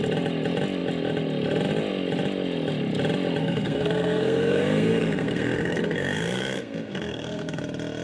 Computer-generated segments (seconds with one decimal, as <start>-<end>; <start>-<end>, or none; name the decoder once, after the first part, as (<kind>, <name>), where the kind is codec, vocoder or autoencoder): 3.4-7.6 (codec, SNAC)